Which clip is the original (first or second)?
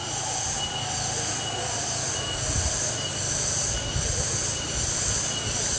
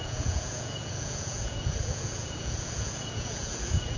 first